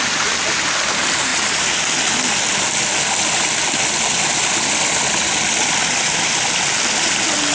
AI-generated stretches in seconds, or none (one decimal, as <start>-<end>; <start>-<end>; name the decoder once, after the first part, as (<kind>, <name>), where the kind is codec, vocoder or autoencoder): none